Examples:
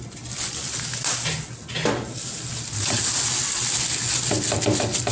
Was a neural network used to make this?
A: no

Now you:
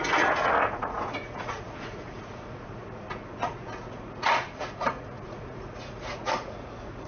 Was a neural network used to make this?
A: yes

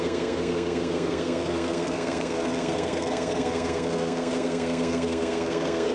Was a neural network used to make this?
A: yes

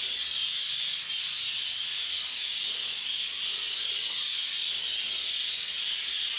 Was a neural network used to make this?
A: no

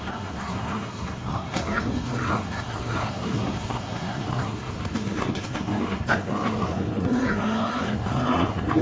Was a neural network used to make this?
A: yes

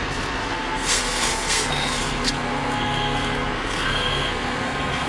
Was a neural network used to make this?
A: yes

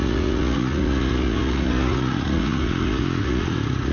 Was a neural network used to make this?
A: yes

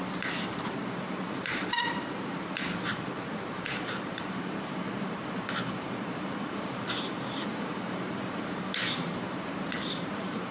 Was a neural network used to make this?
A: yes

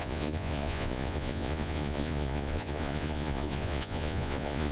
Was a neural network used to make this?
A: yes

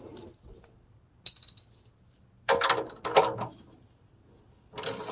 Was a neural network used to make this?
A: no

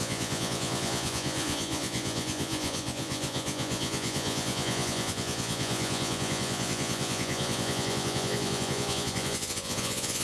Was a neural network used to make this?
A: yes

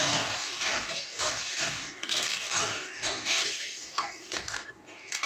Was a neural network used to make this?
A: yes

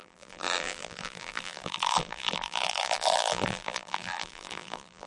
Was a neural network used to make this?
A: yes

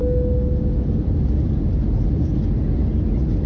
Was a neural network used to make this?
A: no